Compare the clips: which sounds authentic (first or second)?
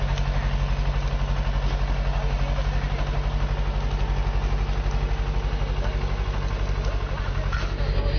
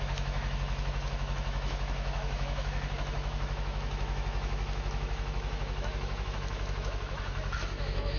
first